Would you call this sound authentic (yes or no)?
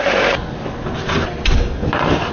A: yes